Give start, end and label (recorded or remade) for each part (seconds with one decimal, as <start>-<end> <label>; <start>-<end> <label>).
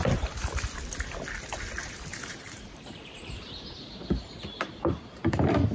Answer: 0.0-1.8 recorded; 1.8-5.2 remade; 5.2-5.7 recorded